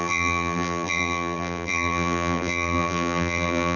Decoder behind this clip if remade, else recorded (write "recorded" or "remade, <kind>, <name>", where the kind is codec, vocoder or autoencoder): remade, vocoder, BigVGAN v2